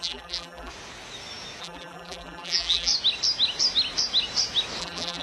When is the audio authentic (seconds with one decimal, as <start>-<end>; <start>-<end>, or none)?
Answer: 0.7-1.6; 2.9-4.8